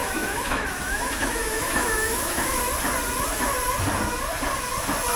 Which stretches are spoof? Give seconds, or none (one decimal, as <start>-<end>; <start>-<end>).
0.0-2.6